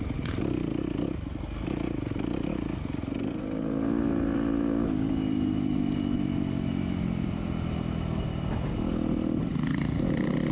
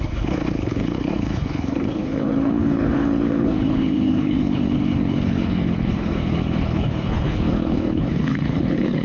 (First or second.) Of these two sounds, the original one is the first